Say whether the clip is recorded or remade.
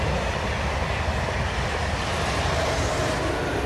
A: recorded